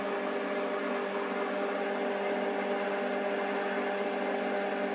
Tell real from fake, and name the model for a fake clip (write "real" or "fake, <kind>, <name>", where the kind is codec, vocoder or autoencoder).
real